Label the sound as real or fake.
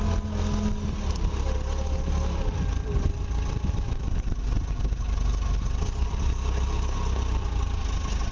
real